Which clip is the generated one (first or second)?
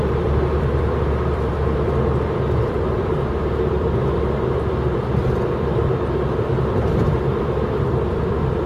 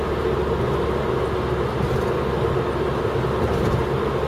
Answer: first